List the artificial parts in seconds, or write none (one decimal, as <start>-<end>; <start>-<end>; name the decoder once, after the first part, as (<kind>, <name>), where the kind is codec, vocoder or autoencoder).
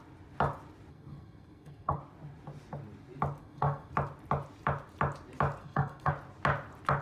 0.9-2.0 (codec, SNAC); 3.4-3.9; 5.6-6.1